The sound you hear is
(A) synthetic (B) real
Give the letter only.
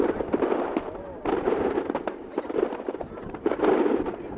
B